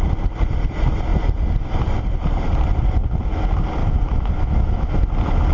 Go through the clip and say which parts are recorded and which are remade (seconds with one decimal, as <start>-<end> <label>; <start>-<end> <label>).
0.0-3.8 recorded; 3.8-4.9 remade; 4.9-5.5 recorded